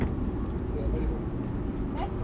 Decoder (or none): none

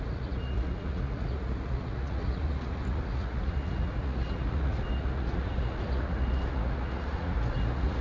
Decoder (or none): vocoder, Vocos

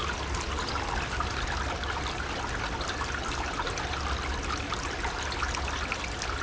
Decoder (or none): none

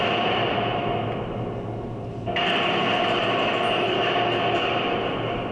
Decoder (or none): none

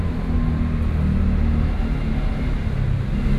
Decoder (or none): none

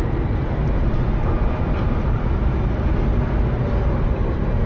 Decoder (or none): none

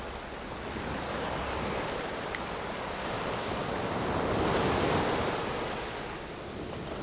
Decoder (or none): none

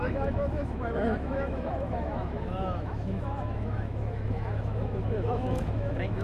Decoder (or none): autoencoder, DAC-VAE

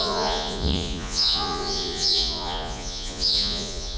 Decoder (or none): vocoder, Vocos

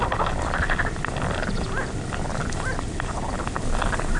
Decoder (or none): none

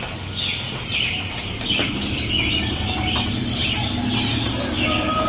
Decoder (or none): none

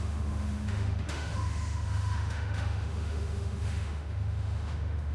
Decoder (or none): autoencoder, DAC-VAE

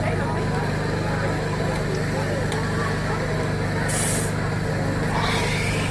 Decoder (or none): none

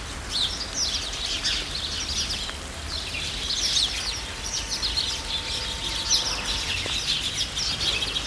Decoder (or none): none